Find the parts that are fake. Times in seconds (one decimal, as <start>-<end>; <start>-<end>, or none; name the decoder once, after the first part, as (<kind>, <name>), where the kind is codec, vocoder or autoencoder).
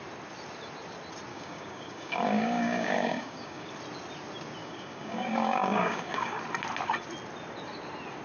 1.3-3.7 (codec, DAC); 4.6-6.4